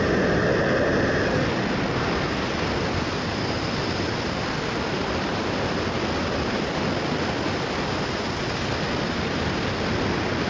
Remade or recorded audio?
recorded